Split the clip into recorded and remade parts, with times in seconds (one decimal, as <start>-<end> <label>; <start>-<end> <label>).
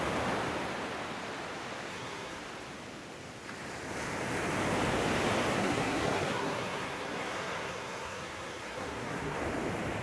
0.0-1.9 recorded; 1.9-2.4 remade; 2.4-5.5 recorded; 5.5-9.4 remade; 9.4-10.0 recorded